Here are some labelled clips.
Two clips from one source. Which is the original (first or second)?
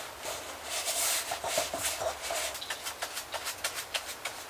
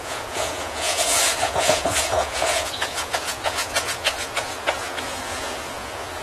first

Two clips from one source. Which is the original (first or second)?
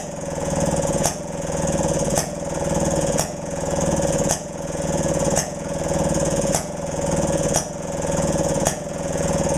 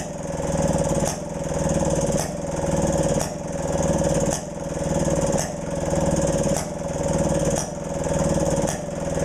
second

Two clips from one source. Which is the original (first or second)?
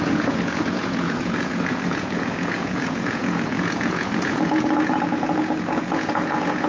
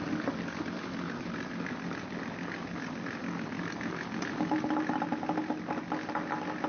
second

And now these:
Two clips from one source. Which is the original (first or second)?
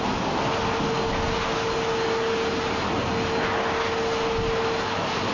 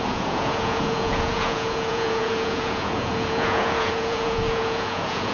first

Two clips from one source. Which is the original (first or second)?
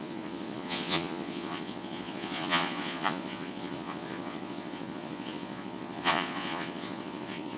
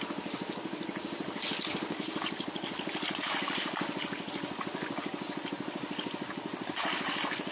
second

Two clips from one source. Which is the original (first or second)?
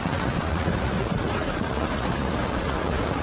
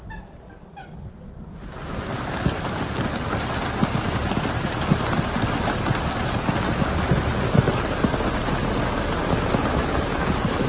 second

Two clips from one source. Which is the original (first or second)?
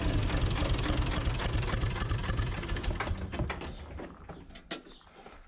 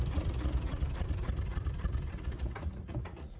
first